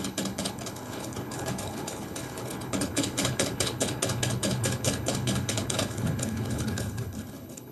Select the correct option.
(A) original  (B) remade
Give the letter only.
B